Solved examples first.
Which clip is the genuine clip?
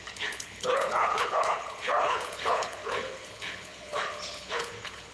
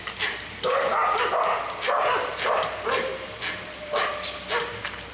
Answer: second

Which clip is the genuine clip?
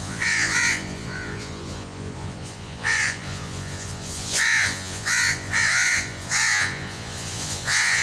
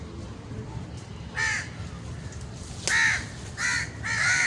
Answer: second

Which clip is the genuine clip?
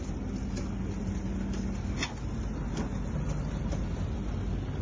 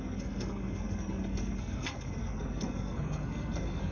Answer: first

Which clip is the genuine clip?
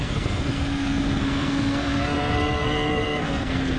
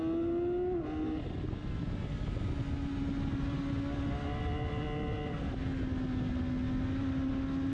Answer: second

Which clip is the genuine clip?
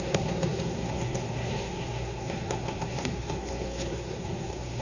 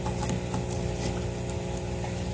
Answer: second